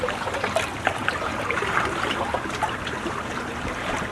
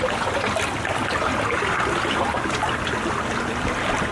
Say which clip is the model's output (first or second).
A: first